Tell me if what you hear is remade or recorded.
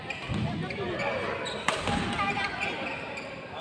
recorded